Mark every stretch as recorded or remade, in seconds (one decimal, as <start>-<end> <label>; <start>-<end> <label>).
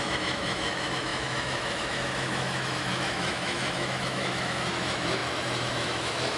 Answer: 0.0-6.4 remade